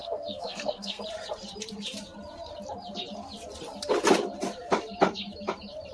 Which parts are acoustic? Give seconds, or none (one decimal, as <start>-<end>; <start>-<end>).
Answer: 1.0-5.9